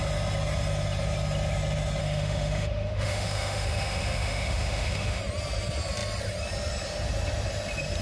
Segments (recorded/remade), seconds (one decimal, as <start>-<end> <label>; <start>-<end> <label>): 0.0-2.0 recorded; 2.0-5.2 remade; 5.2-8.0 recorded